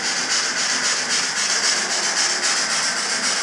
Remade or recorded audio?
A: recorded